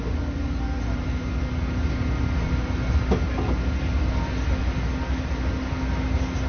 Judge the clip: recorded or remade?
recorded